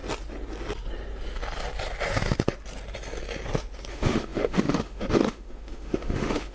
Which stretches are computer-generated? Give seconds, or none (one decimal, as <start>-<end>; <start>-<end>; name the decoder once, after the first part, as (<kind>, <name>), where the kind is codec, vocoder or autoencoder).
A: 3.9-6.5 (autoencoder, DAC-VAE)